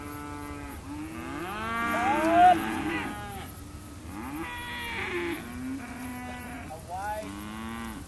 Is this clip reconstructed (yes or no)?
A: no